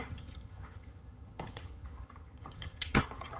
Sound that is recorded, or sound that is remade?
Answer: remade